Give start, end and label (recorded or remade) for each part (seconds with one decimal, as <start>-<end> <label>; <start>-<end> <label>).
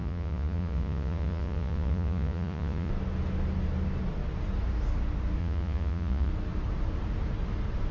0.0-2.9 remade; 2.9-5.4 recorded; 5.4-6.3 remade; 6.3-7.9 recorded